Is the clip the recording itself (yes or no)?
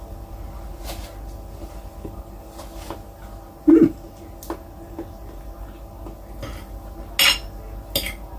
yes